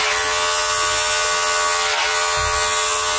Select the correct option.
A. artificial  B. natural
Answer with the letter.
B